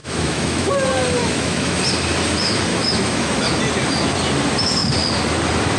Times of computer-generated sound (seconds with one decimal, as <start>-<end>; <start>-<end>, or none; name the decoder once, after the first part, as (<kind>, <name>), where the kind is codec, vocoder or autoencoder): 0.0-0.7 (autoencoder, DAC-VAE); 1.2-1.8; 2.7-3.6